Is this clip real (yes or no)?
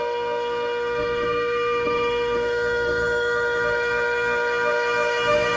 no